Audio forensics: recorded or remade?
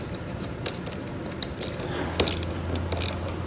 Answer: recorded